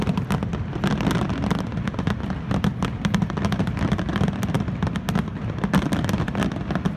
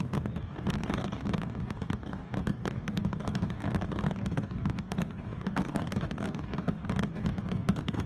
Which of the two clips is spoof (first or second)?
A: second